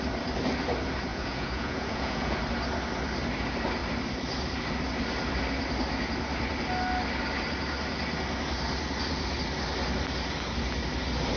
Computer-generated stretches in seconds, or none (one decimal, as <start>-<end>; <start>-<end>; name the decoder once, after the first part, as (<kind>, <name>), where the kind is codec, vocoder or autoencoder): 1.1-2.4 (vocoder, Vocos)